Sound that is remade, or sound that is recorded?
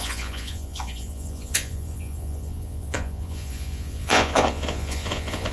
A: remade